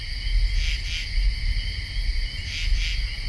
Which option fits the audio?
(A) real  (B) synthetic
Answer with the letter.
A